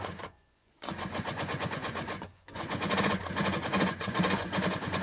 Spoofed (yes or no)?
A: yes